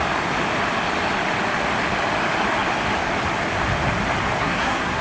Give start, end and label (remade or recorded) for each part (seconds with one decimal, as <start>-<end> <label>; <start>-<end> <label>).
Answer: 0.0-4.4 recorded; 4.4-5.0 remade